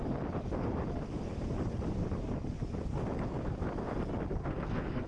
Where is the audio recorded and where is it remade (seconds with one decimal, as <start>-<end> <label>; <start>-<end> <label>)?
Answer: 0.0-4.4 recorded; 4.4-5.1 remade